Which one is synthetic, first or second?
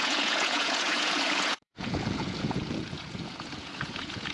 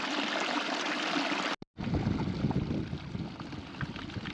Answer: first